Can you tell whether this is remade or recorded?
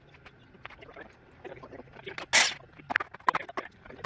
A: recorded